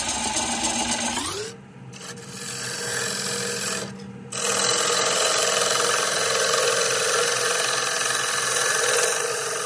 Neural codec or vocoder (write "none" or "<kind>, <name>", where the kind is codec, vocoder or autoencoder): none